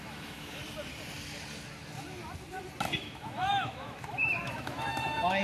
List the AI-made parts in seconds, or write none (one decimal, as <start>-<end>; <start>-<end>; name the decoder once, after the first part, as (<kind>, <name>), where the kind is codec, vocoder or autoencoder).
0.0-0.6 (autoencoder, DAC-VAE); 3.0-5.4